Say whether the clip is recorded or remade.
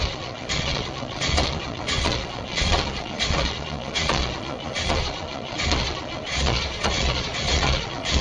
remade